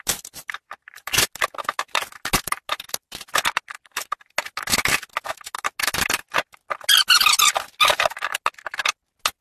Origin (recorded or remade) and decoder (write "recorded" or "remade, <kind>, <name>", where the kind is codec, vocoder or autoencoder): recorded